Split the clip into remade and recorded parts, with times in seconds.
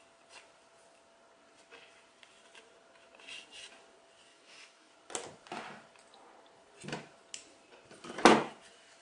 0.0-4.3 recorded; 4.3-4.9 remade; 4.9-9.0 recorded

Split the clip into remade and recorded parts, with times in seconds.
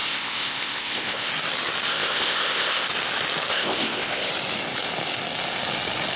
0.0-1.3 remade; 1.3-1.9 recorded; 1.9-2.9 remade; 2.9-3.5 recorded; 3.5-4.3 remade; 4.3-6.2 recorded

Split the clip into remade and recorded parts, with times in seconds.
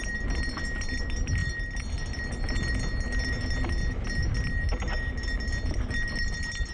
0.0-6.7 recorded